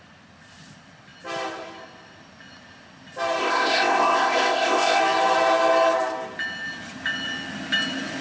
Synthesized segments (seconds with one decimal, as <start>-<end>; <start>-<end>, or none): 3.4-5.0